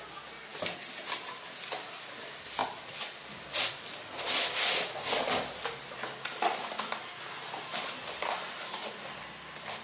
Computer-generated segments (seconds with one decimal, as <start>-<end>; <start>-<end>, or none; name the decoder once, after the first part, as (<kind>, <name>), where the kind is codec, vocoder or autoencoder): none